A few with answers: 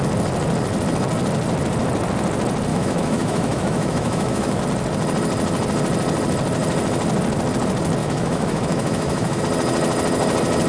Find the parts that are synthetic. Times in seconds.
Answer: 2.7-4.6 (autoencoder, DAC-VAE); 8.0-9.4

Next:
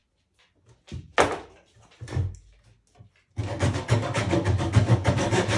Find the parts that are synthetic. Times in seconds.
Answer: 3.4-5.6 (codec, DAC)

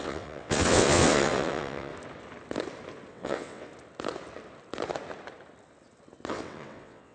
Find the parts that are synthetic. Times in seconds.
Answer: 0.0-1.9 (vocoder, WaveNeXt); 3.1-3.7; 6.3-7.1

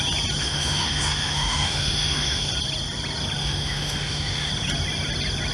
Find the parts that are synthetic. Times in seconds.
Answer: 0.4-2.5 (autoencoder, DAC-VAE); 3.4-4.5